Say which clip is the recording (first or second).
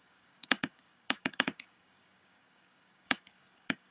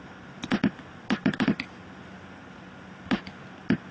second